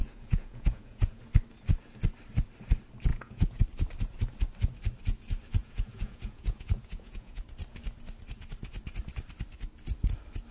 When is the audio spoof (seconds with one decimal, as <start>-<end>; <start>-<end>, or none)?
0.0-1.2; 3.1-3.6; 5.6-7.4